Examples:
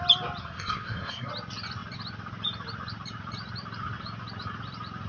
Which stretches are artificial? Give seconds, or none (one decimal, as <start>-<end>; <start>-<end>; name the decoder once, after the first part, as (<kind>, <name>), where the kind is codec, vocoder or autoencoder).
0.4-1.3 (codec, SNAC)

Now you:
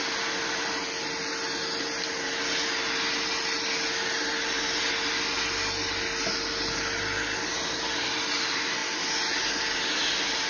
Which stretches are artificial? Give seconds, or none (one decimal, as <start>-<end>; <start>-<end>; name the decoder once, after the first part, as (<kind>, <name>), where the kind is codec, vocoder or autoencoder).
none

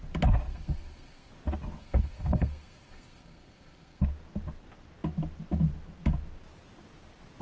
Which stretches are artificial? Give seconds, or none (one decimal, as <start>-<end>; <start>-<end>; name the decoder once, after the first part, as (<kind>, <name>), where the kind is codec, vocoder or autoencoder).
0.5-1.3 (codec, SNAC); 1.8-4.0